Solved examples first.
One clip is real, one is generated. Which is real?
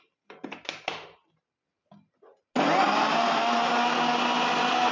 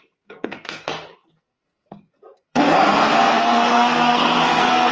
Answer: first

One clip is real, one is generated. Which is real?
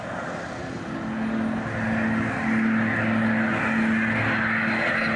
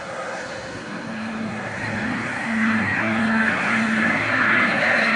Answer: first